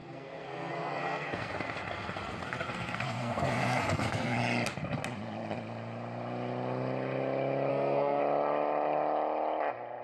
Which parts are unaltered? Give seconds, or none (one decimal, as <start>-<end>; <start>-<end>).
4.4-7.7; 8.2-10.0